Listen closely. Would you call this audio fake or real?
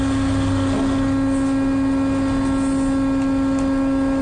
real